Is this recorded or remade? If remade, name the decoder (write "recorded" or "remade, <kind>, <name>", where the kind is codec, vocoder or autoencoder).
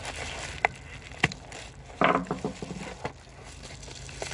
recorded